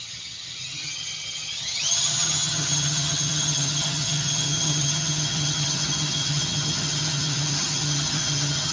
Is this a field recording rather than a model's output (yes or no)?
no